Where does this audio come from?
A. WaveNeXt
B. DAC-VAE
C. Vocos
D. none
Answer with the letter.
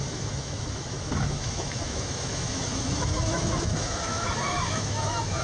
B